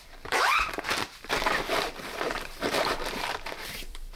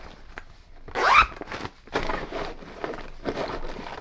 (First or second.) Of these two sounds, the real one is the second